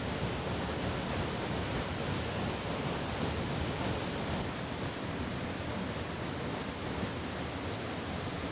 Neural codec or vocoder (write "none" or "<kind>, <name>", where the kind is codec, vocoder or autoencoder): none